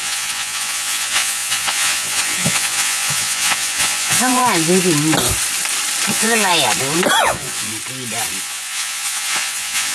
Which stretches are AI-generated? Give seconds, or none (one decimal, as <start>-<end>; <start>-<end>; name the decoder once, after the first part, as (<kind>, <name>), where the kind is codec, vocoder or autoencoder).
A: 0.0-4.4 (vocoder, Vocos); 6.1-6.5; 7.2-7.7; 8.4-9.9